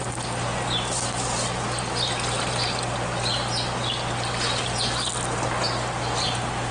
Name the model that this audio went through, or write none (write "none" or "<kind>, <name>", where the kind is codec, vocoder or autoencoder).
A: none